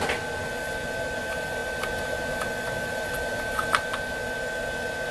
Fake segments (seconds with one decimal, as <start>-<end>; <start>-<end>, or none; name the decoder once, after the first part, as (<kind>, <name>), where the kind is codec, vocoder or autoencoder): none